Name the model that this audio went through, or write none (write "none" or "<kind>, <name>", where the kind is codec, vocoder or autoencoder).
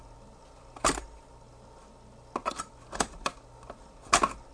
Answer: none